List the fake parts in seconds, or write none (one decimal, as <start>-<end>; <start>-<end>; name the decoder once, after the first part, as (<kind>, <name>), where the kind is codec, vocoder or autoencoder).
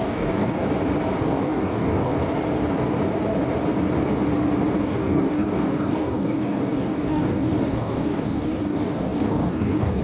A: 0.0-0.6 (codec, DAC); 1.2-2.2; 4.8-10.0